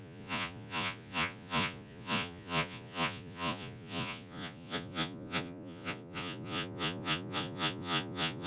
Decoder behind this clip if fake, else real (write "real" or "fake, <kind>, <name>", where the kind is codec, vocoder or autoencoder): fake, vocoder, Vocos